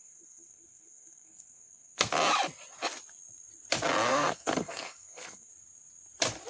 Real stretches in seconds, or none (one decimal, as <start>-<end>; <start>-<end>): 2.1-4.1; 5.5-6.5